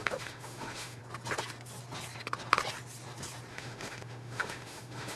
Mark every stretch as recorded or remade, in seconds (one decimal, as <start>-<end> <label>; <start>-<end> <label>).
0.0-1.0 remade; 1.0-3.5 recorded; 3.5-5.2 remade